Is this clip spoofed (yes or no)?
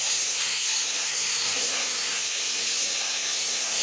yes